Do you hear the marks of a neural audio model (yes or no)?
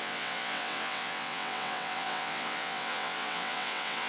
yes